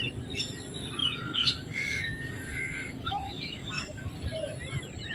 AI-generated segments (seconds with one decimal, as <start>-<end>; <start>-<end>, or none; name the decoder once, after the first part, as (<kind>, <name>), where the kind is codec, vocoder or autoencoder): 1.0-4.1 (codec, DAC)